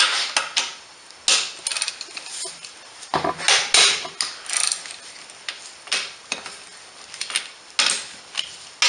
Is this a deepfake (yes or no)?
no